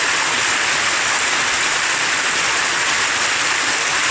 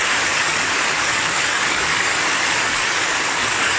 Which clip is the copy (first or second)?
second